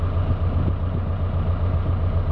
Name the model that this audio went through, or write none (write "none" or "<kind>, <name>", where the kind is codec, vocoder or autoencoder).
none